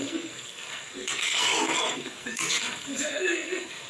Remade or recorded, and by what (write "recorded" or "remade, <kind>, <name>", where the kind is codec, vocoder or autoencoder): remade, codec, SNAC